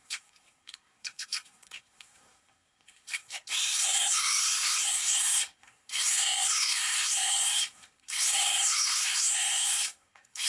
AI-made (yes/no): yes